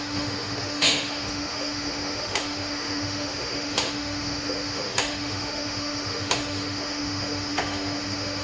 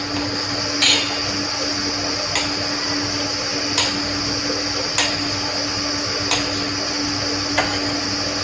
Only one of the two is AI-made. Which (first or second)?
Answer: first